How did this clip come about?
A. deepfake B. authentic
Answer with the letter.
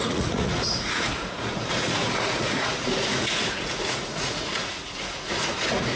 A